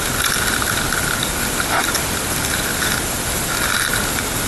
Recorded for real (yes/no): yes